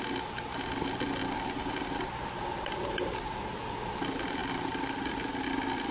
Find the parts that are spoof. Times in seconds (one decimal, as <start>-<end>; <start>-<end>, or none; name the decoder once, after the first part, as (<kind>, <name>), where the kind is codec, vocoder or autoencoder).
none